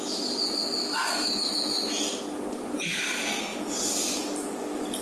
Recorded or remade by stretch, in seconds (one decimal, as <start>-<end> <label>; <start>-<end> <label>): 0.0-0.8 recorded; 0.8-2.2 remade; 2.2-5.0 recorded